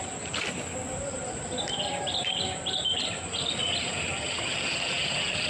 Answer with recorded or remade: recorded